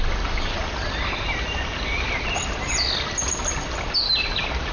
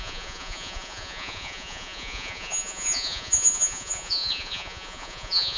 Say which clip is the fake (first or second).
second